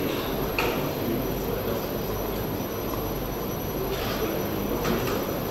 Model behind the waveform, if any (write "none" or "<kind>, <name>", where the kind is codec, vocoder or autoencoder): none